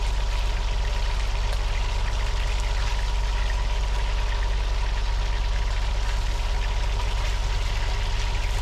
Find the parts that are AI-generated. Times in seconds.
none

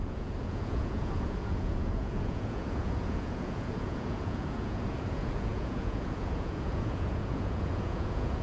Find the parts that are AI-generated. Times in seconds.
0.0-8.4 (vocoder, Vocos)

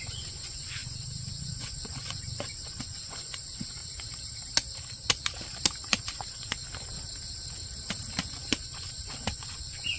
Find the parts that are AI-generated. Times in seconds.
0.0-3.8 (vocoder, Vocos); 5.9-6.6; 8.2-10.0